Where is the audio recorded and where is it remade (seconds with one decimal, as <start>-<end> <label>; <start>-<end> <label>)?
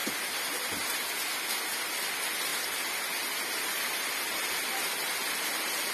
0.0-5.9 recorded